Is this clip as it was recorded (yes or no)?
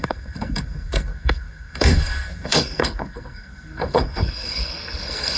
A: no